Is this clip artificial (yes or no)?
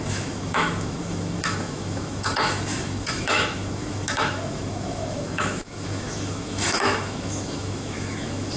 yes